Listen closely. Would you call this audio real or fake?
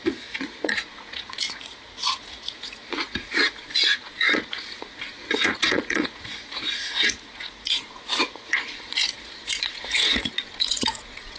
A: fake